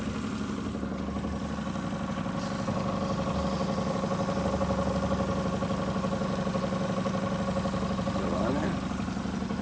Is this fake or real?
real